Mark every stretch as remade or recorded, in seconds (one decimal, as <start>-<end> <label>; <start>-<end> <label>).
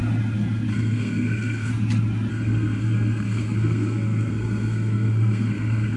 0.0-0.7 recorded; 0.7-1.7 remade; 1.7-2.3 recorded; 2.3-6.0 remade